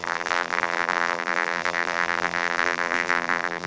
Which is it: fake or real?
fake